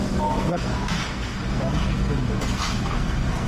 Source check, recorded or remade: remade